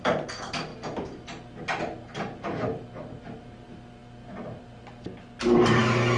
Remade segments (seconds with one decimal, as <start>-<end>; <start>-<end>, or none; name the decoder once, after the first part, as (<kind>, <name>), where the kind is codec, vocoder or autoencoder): none